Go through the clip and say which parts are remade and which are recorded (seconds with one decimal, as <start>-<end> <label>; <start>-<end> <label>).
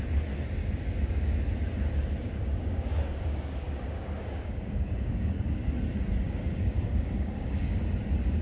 0.0-0.6 recorded; 0.6-1.2 remade; 1.2-2.2 recorded; 2.2-5.6 remade; 5.6-6.2 recorded; 6.2-7.8 remade; 7.8-8.4 recorded